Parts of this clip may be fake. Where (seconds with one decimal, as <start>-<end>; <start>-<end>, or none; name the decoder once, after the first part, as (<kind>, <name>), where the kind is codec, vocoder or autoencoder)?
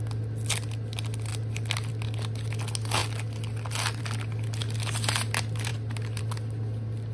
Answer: none